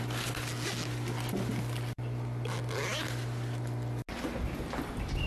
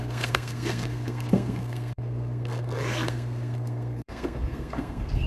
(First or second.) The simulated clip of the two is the second